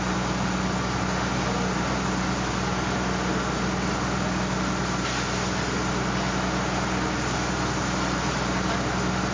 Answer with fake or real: real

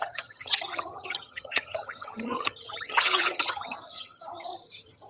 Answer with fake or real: fake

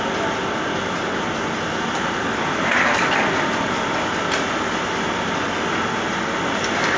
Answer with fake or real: real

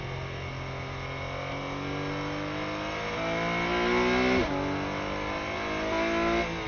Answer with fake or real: real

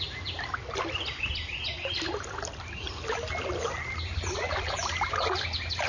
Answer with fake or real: real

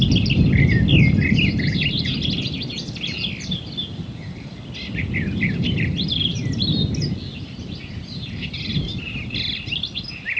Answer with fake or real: real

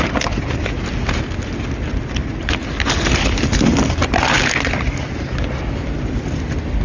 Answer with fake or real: real